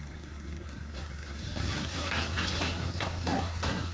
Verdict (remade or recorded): remade